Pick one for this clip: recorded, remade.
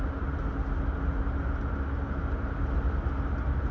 recorded